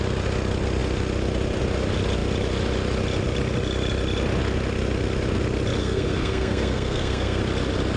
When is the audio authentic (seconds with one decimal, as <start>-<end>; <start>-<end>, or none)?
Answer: 0.0-5.8; 7.4-8.0